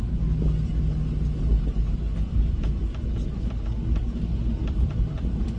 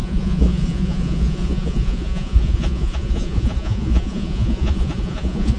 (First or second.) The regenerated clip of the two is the second